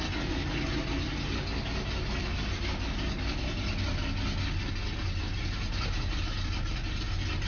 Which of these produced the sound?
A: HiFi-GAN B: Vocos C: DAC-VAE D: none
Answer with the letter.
D